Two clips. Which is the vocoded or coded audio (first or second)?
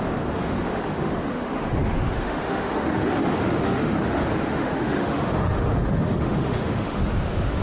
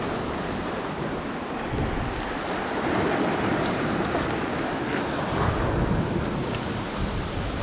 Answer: first